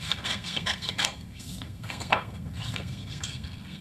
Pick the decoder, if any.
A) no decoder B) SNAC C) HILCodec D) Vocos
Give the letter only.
B